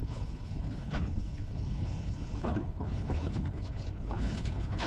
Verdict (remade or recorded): remade